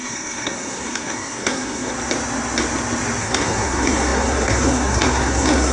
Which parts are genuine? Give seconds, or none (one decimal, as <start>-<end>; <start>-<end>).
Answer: 1.9-3.2